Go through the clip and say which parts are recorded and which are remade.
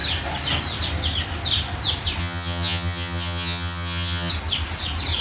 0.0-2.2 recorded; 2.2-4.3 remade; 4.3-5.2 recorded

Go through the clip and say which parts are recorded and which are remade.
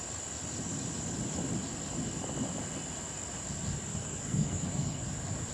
0.0-3.9 recorded; 3.9-5.1 remade; 5.1-5.5 recorded